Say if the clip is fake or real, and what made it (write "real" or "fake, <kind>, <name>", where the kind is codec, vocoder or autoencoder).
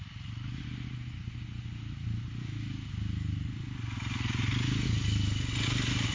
real